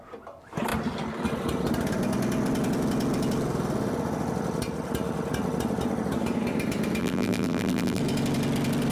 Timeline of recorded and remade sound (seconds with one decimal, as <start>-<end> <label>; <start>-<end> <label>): 0.0-7.0 recorded; 7.0-8.0 remade; 8.0-8.9 recorded